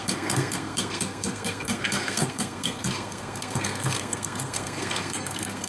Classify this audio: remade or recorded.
remade